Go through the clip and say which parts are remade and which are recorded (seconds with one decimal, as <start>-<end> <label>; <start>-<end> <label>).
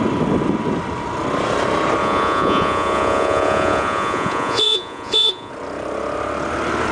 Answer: 0.0-2.0 recorded; 2.0-5.5 remade; 5.5-6.9 recorded